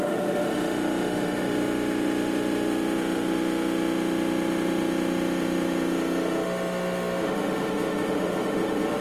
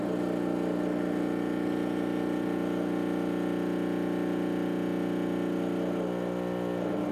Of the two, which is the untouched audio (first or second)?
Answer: second